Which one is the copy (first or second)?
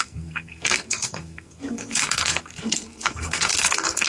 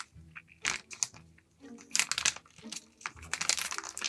first